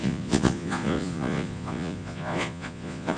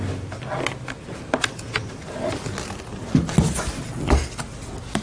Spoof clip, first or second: first